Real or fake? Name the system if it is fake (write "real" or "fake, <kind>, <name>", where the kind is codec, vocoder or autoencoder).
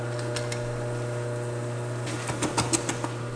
real